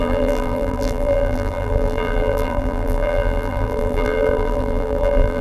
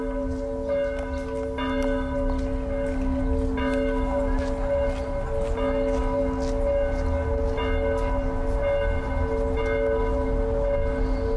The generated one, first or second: first